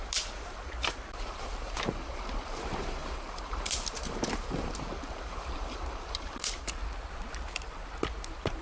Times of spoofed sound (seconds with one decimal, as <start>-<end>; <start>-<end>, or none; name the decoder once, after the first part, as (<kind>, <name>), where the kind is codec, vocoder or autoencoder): 0.0-6.8 (vocoder, BigVGAN v2); 8.1-8.6